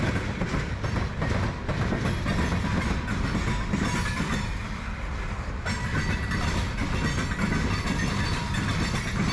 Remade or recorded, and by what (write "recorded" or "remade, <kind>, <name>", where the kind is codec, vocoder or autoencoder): recorded